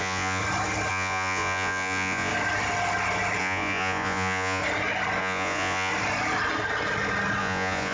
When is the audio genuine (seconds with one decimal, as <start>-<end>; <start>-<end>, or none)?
0.4-0.9; 2.3-3.4; 4.6-5.2; 5.9-7.4